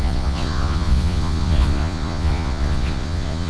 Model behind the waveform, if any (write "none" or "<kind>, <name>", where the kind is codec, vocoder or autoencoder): vocoder, Vocos